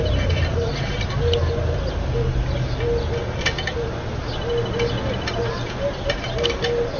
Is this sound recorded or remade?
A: recorded